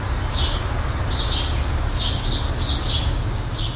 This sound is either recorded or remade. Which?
recorded